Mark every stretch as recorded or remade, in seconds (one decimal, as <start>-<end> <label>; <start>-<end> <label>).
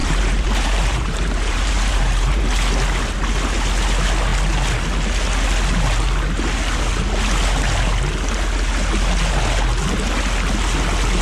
0.0-2.4 remade; 2.4-11.2 recorded